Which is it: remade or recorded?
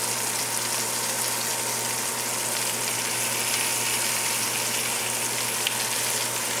recorded